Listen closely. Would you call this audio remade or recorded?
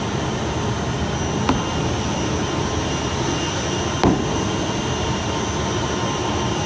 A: recorded